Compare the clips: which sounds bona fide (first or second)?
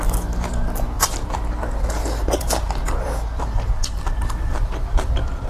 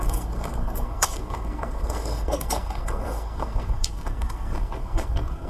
first